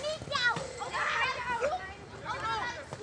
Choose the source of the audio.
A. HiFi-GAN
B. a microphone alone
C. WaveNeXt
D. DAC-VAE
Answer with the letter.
B